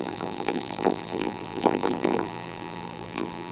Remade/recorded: remade